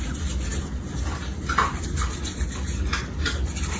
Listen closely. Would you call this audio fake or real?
real